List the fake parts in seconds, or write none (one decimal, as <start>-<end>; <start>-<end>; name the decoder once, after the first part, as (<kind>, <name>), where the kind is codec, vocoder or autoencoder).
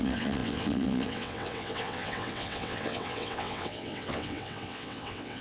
0.0-5.4 (vocoder, WaveNeXt)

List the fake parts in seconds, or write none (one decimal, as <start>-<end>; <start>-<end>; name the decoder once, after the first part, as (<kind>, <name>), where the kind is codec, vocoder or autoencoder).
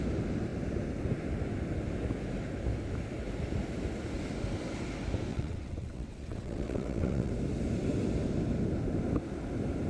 5.3-7.3 (vocoder, WaveNeXt)